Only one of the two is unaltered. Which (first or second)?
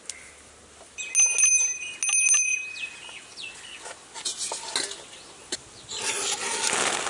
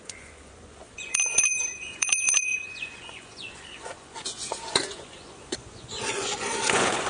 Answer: first